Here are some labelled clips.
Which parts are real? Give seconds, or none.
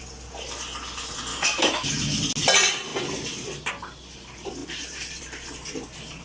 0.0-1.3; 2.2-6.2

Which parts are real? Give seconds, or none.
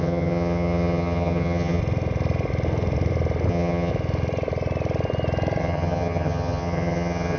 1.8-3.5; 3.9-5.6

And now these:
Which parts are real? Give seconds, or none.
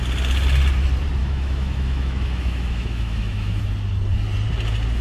0.0-1.2; 3.6-5.0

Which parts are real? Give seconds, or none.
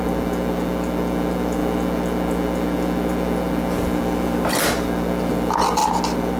0.0-6.4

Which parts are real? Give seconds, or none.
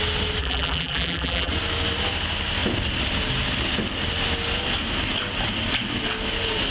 0.0-0.4; 1.5-6.7